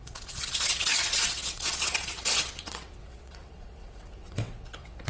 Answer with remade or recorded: remade